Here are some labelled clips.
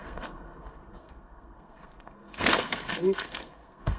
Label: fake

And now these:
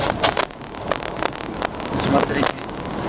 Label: real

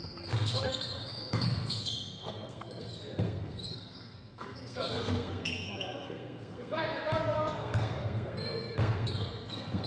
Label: fake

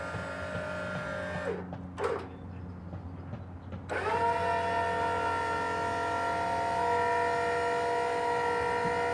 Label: real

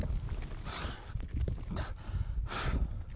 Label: real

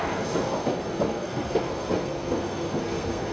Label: fake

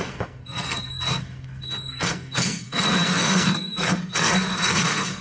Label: fake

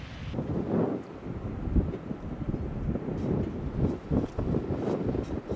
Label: real